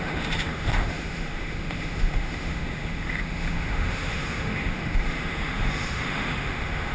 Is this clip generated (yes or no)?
yes